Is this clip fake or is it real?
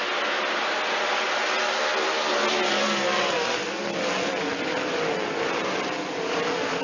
real